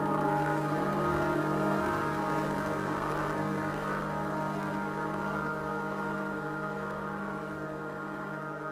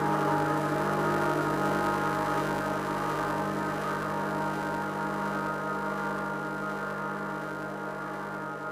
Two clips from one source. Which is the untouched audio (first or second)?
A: second